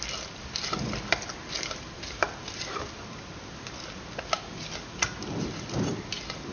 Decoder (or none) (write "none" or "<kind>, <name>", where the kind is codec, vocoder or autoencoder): none